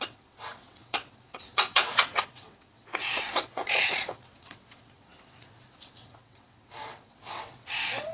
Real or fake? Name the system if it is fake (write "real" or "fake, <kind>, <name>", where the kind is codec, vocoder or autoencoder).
fake, vocoder, WaveNeXt